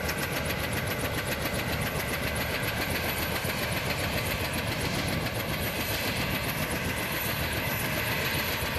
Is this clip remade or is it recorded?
recorded